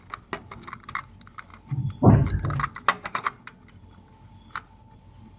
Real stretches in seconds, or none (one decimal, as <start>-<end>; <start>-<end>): 0.0-5.4